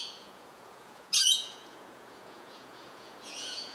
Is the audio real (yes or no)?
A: no